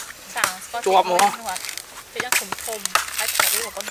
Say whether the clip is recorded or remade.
recorded